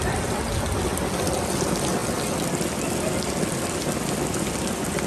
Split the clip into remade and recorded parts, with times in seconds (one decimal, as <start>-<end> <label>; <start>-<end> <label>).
0.0-5.1 recorded